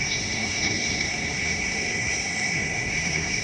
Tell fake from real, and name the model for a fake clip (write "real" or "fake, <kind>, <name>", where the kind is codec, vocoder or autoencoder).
fake, codec, SNAC